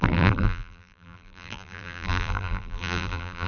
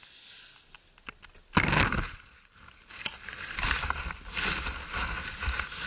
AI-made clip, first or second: first